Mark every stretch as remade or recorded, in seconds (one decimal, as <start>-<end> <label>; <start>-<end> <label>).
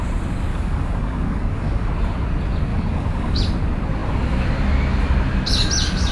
0.0-0.5 recorded; 0.5-1.9 remade; 1.9-2.7 recorded; 2.7-3.4 remade; 3.4-6.1 recorded